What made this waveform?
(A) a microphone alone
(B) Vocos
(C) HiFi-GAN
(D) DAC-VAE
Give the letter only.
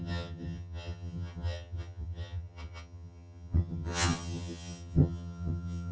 C